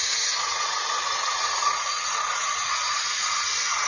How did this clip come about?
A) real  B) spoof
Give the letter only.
B